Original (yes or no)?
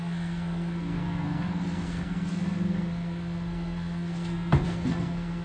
no